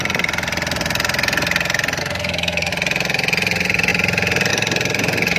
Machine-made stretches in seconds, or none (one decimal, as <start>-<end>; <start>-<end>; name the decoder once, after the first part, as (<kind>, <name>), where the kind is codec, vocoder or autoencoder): 2.0-2.7 (codec, SNAC)